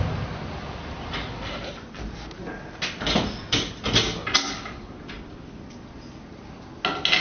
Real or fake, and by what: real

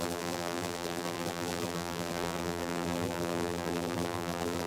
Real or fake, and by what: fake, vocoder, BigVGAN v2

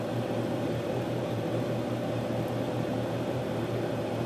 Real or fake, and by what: fake, vocoder, BigVGAN v2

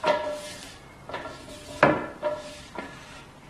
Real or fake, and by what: real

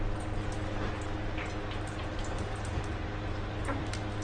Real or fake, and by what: real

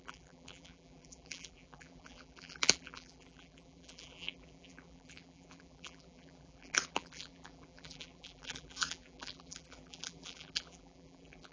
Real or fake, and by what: fake, vocoder, BigVGAN v2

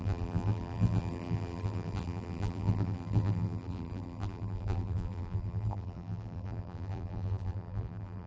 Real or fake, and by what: fake, vocoder, BigVGAN v2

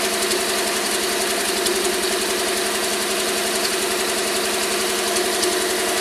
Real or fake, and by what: real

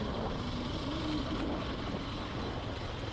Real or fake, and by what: real